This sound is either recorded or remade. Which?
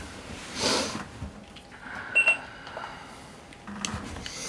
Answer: recorded